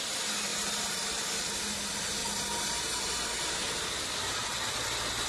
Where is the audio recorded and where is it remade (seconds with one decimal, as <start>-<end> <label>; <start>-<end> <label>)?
0.0-5.3 recorded